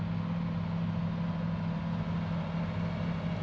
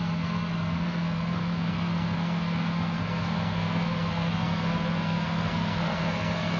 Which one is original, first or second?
first